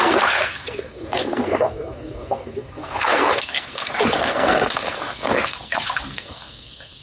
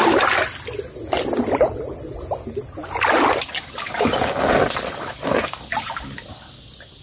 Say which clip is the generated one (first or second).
first